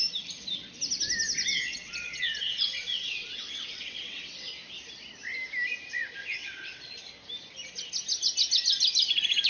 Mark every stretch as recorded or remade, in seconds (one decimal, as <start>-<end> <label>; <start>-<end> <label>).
0.0-1.5 recorded; 1.5-4.5 remade; 4.5-6.2 recorded; 6.2-6.9 remade; 6.9-9.5 recorded